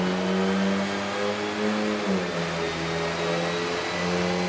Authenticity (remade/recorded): recorded